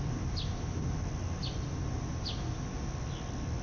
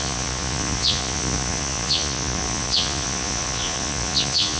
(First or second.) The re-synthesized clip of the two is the second